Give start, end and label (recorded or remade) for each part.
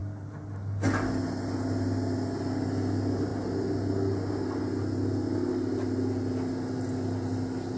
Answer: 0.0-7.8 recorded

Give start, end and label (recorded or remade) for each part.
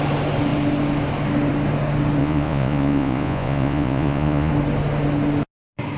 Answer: 0.0-2.2 recorded; 2.2-4.5 remade; 4.5-6.0 recorded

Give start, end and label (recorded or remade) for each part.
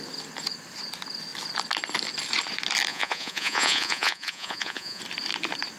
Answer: 0.0-2.9 recorded; 2.9-5.0 remade; 5.0-5.8 recorded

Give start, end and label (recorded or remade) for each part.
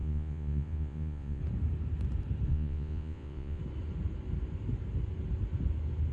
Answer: 0.0-1.4 remade; 1.4-2.5 recorded; 2.5-3.6 remade; 3.6-6.1 recorded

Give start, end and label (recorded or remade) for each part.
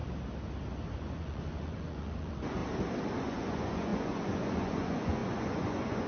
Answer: 0.0-0.7 recorded; 0.7-2.6 remade; 2.6-3.2 recorded; 3.2-6.1 remade